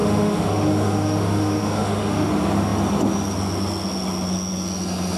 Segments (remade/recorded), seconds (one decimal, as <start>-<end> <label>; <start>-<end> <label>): 0.0-2.3 remade; 2.3-5.2 recorded